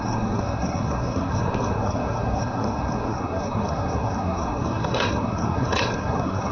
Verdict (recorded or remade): remade